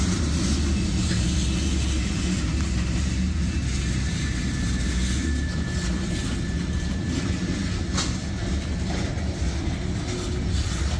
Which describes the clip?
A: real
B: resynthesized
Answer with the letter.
A